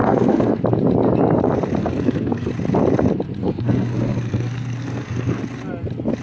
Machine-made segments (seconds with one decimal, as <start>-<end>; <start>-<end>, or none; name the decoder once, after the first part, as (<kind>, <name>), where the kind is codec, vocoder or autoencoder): 0.0-0.6 (codec, SNAC); 1.8-2.5; 3.4-5.4